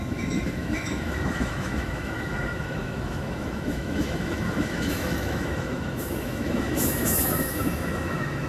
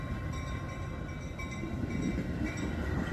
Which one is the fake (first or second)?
first